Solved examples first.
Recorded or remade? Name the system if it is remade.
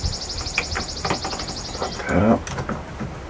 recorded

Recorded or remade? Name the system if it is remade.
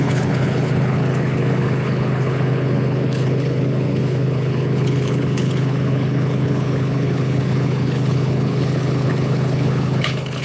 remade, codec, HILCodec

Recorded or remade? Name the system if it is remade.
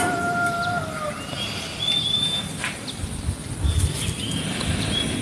recorded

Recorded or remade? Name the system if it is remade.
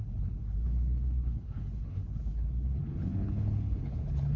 remade, codec, HILCodec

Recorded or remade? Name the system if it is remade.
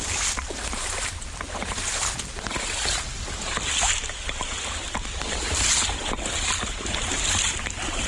recorded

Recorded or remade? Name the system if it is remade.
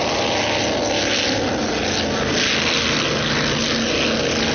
recorded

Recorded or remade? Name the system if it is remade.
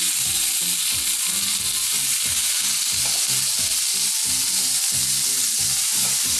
recorded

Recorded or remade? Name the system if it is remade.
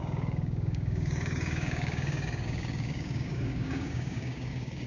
remade, codec, DAC